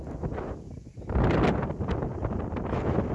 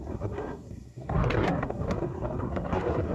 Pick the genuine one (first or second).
first